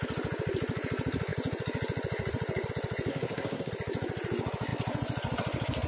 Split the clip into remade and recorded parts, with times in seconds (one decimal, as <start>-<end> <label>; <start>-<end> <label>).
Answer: 0.0-3.1 recorded; 3.1-3.7 remade; 3.7-5.9 recorded